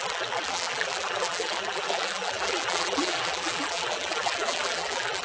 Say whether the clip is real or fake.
fake